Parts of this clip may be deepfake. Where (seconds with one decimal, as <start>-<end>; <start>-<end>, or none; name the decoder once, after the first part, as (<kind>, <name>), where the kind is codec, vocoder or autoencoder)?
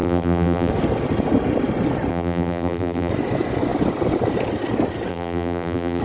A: 0.0-0.7 (vocoder, BigVGAN v2); 2.1-3.1; 5.1-6.0